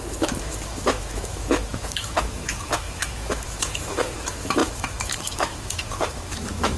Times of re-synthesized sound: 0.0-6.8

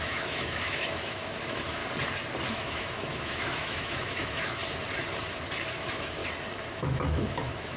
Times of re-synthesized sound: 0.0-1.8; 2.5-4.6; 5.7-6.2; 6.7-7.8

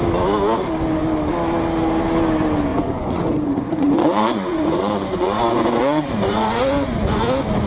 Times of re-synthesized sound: 2.7-7.2

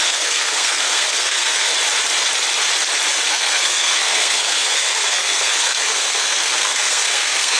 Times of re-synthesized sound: 0.0-1.7; 3.3-7.6

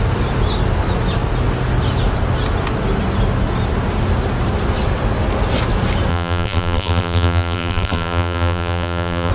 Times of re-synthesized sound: 6.1-9.3

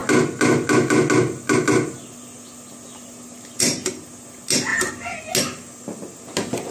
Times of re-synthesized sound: none

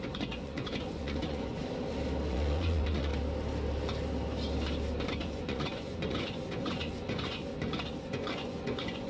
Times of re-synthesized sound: 0.0-1.6; 2.3-3.1; 5.1-7.4; 8.0-9.1

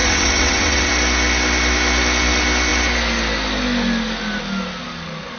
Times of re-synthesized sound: 0.0-0.9